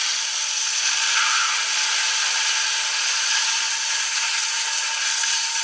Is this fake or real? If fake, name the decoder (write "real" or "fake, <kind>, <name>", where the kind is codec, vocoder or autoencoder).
real